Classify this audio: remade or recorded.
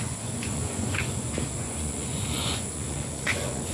remade